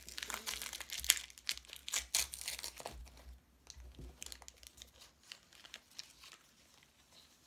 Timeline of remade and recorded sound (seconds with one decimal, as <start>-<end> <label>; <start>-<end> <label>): 0.0-7.5 recorded

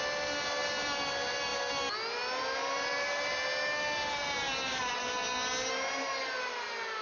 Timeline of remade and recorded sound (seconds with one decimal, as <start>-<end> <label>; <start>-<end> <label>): 0.0-7.0 recorded

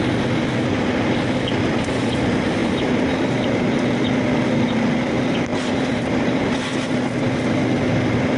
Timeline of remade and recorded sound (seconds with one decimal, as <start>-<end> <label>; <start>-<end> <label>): 0.0-2.6 recorded; 2.6-3.6 remade; 3.6-5.5 recorded; 5.5-7.0 remade; 7.0-8.4 recorded

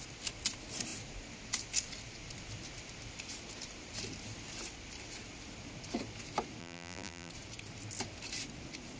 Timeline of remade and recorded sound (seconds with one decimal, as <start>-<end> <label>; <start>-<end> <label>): 0.0-6.6 recorded; 6.6-7.3 remade; 7.3-9.0 recorded

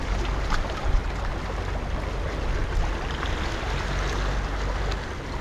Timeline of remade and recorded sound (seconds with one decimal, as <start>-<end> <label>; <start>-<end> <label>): 0.0-5.4 recorded